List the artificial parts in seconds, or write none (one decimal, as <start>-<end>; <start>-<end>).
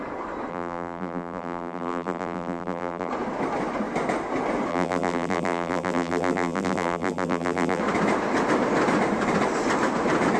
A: 0.5-3.1; 4.7-7.8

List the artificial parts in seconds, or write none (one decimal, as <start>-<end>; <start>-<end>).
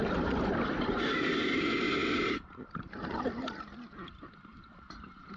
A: none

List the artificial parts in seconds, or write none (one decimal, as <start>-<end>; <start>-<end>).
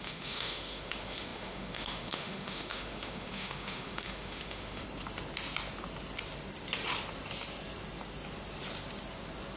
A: 0.0-4.8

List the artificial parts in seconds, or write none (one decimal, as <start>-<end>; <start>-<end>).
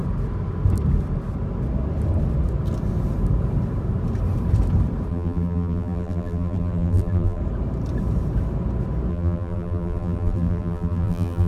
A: 5.1-7.4; 9.1-11.5